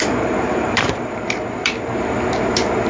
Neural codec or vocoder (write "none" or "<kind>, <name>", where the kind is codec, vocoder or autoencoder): vocoder, BigVGAN v2